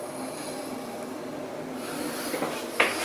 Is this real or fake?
real